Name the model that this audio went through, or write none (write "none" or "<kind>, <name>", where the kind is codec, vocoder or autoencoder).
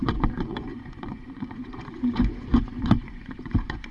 vocoder, Vocos